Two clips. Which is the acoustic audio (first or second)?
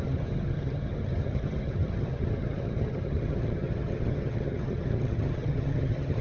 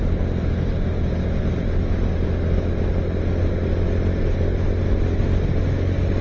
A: second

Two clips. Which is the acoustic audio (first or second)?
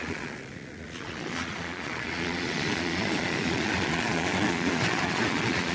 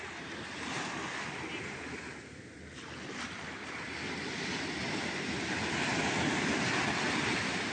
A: second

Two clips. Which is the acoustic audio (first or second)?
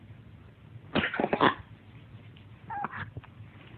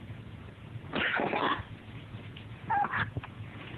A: first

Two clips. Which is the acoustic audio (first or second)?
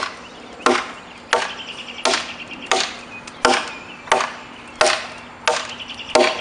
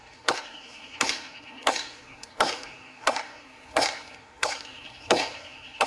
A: first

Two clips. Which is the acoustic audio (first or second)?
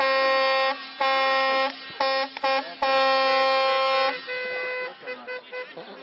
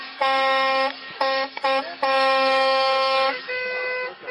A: first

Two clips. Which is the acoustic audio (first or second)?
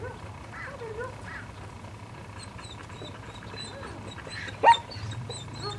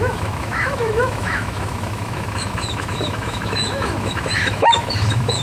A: first